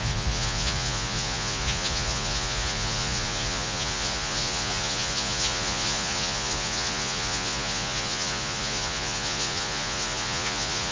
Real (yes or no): no